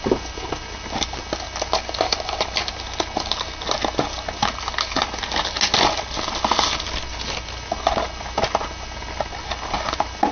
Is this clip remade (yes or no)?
no